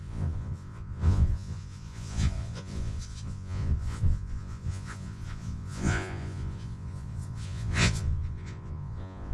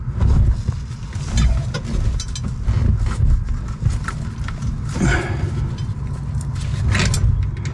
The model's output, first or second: first